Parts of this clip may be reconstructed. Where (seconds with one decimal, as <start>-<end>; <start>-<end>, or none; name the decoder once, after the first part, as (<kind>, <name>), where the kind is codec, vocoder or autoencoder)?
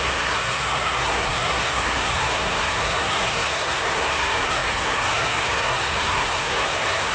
0.0-7.1 (codec, SNAC)